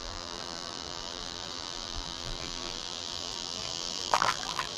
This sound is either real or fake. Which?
fake